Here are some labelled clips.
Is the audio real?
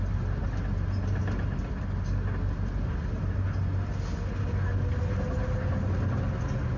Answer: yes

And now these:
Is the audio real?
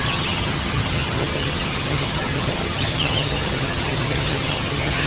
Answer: no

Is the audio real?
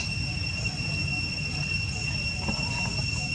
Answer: yes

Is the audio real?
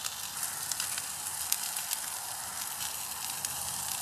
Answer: yes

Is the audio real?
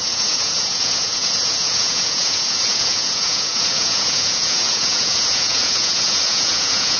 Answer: no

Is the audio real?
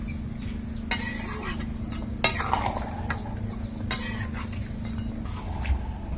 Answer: yes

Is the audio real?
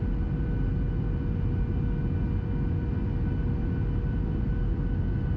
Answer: yes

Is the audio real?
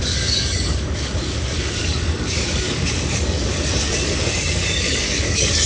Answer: no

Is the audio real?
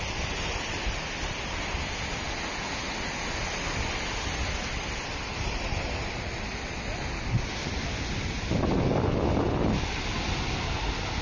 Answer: yes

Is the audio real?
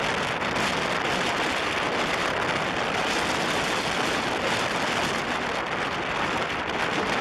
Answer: yes